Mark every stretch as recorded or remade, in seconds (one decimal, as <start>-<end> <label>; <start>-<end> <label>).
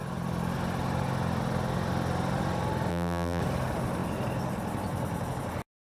0.0-2.9 recorded; 2.9-3.4 remade; 3.4-5.9 recorded